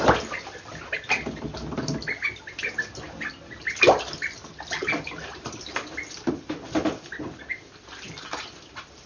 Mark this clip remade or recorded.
recorded